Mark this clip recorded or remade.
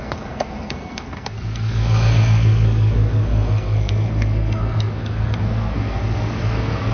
remade